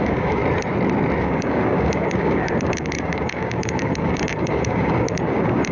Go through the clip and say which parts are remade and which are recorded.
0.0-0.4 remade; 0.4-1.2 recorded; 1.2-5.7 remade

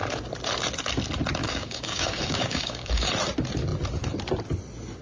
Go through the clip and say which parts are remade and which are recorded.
0.0-1.4 recorded; 1.4-2.9 remade; 2.9-5.0 recorded

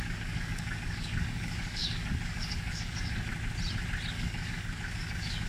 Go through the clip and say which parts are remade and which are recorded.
0.0-3.3 remade; 3.3-4.1 recorded; 4.1-5.5 remade